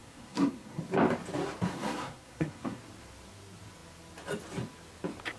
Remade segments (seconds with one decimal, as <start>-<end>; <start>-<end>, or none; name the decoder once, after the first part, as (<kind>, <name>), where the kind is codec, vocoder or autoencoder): 0.0-0.8 (codec, SNAC); 1.7-2.8